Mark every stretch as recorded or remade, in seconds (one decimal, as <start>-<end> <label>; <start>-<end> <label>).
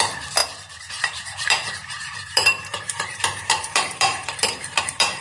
0.0-0.4 remade; 0.4-0.9 recorded; 0.9-5.2 remade